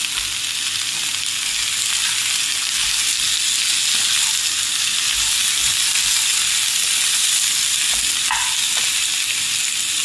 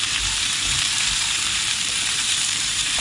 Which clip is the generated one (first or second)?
second